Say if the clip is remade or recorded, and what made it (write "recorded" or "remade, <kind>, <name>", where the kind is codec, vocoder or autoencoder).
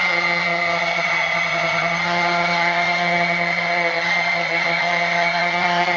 remade, vocoder, HiFi-GAN